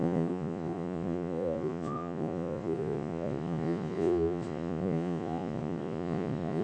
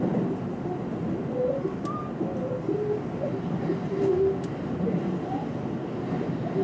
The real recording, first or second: second